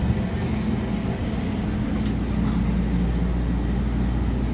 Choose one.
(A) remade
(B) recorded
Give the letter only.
B